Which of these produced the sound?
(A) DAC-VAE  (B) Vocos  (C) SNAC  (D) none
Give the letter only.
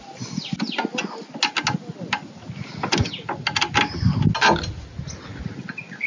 D